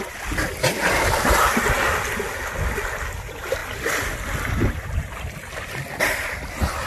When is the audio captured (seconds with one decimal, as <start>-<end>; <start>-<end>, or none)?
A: 0.0-6.9

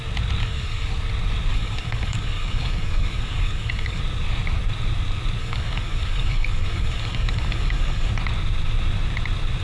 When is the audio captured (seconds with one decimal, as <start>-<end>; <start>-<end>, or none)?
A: 0.0-0.4; 0.9-1.5; 4.0-5.4; 8.1-9.6

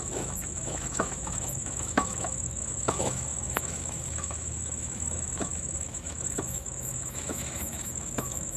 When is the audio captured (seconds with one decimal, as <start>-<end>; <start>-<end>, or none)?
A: none

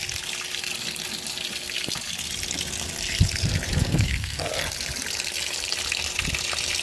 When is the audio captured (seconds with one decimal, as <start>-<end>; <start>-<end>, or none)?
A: 0.0-3.8; 4.5-6.8